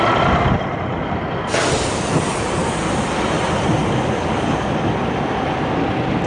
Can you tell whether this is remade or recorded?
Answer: recorded